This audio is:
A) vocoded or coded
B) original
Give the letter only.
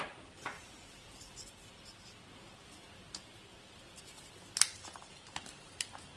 B